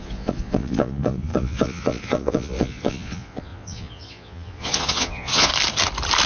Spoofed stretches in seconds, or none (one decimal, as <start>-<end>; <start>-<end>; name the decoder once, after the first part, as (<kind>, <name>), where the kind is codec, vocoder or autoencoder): 0.0-5.5 (vocoder, Vocos)